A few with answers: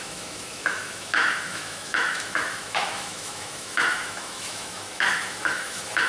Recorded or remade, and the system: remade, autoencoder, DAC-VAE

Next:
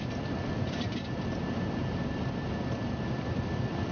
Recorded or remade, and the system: remade, vocoder, BigVGAN v2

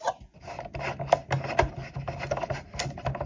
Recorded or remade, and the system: recorded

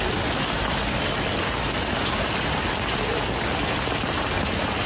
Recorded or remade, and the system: recorded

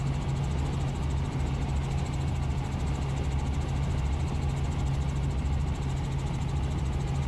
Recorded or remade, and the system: recorded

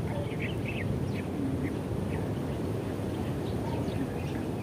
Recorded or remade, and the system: recorded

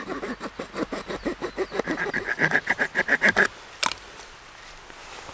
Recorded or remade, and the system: recorded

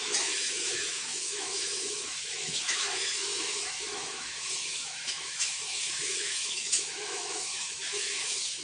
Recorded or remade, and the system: remade, autoencoder, DAC-VAE